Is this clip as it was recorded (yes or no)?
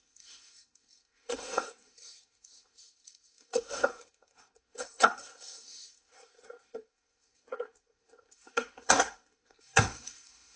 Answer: no